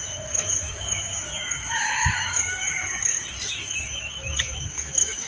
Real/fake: fake